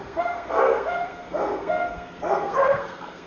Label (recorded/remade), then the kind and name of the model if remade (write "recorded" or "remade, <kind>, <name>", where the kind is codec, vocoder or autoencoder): remade, codec, SNAC